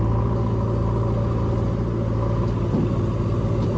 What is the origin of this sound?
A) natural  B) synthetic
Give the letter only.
A